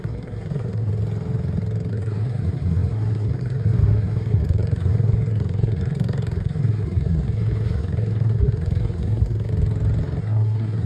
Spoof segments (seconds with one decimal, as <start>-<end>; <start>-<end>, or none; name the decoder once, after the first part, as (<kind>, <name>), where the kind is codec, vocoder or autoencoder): 0.0-0.9 (codec, SNAC); 1.9-9.5; 10.2-10.9